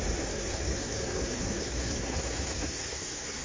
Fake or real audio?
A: fake